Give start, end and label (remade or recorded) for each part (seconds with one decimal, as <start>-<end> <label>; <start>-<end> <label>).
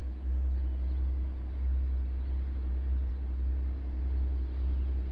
0.0-5.1 recorded